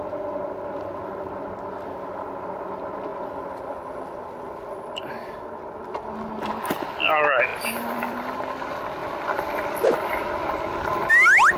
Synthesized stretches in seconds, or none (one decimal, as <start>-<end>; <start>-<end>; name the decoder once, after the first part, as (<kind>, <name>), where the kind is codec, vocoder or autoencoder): 3.1-5.8 (vocoder, BigVGAN v2); 7.5-8.3; 9.0-11.1